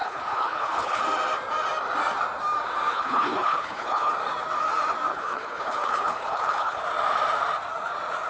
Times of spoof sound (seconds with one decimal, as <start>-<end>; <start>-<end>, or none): 0.0-1.0; 2.9-4.1; 5.1-6.8